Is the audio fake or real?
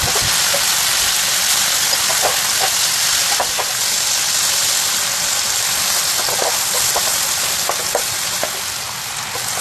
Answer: real